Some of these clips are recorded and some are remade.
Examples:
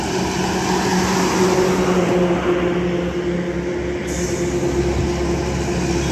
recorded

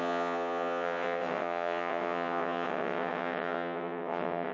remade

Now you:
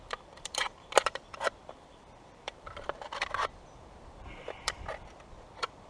remade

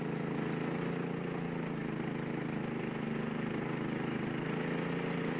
recorded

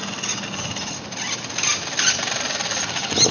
recorded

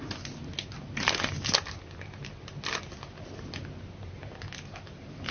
recorded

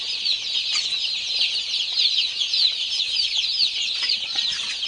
recorded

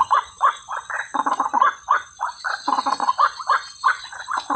remade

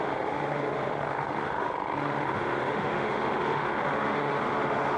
remade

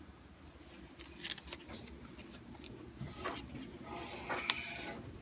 recorded